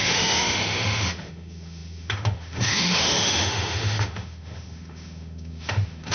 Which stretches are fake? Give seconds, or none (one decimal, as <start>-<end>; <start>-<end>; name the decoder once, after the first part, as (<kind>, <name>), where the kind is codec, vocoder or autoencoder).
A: 0.0-6.1 (autoencoder, DAC-VAE)